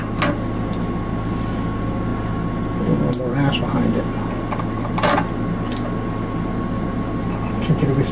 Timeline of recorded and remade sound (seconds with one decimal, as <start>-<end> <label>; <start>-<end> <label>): 0.0-8.1 recorded